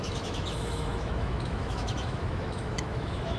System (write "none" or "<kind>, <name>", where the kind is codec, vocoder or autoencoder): autoencoder, DAC-VAE